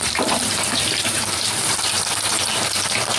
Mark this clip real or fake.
fake